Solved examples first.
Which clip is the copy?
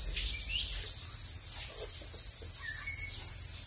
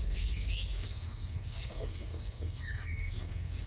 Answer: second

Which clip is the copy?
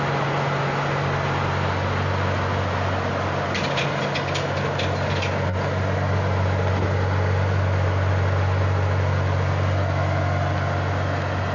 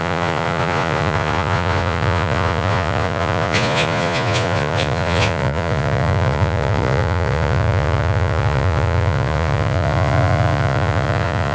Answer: second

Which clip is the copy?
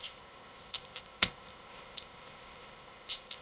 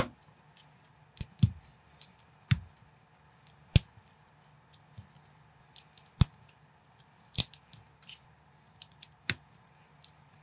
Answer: first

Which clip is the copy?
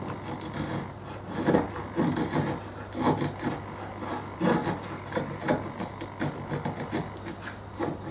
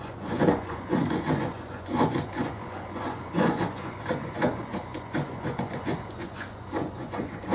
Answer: second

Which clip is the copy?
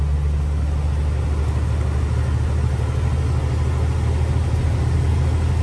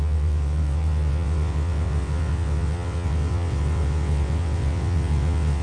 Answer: second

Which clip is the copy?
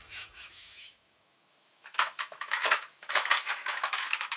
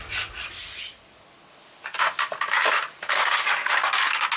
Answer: first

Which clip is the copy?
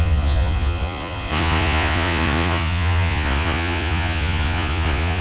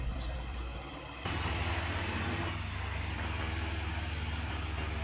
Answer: first